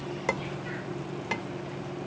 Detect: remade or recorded recorded